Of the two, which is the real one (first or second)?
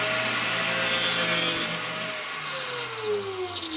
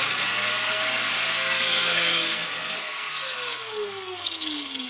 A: first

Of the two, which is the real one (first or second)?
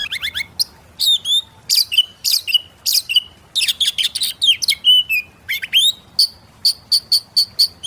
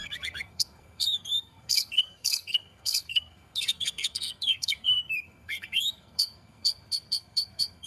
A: first